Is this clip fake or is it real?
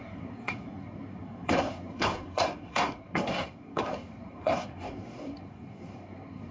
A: fake